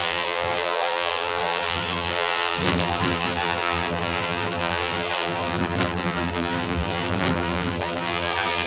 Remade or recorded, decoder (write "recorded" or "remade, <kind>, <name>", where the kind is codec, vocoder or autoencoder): remade, vocoder, BigVGAN v2